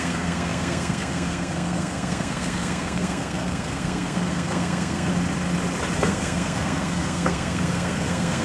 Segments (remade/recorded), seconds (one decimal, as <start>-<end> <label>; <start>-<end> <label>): 0.0-5.1 remade; 5.1-6.0 recorded; 6.0-8.4 remade